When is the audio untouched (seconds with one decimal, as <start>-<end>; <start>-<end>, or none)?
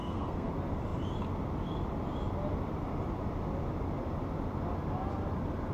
0.5-5.7